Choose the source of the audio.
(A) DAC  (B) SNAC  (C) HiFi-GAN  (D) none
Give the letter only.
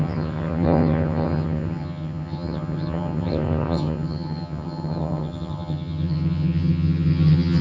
C